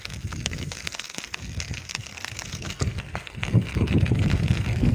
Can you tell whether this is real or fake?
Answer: fake